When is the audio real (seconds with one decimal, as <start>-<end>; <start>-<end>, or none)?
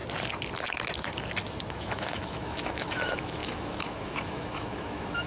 0.0-1.7